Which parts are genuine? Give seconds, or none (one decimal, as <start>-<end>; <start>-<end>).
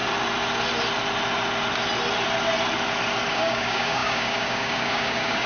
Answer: 0.0-3.3